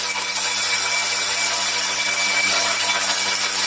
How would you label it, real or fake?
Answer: real